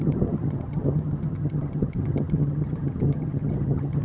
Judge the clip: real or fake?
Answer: fake